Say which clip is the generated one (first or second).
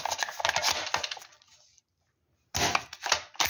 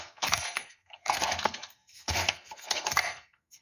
second